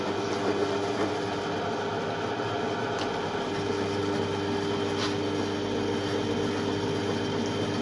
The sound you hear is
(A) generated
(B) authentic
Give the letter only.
B